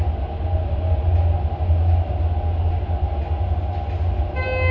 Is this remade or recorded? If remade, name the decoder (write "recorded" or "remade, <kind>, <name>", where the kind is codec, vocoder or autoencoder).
recorded